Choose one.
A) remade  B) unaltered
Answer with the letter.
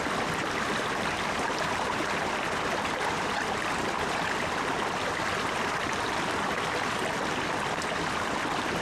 B